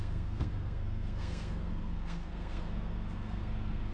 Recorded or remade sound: remade